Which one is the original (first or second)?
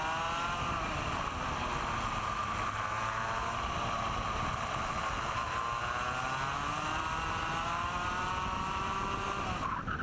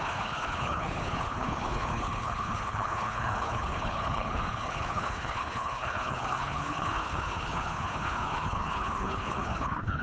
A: first